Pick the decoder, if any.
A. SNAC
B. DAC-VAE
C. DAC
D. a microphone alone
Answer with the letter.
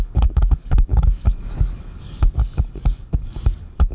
C